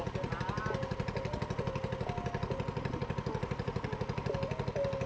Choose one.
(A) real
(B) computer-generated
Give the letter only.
A